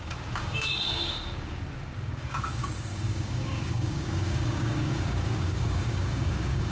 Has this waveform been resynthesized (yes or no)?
yes